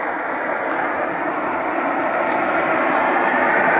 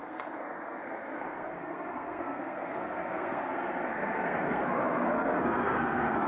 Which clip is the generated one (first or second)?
second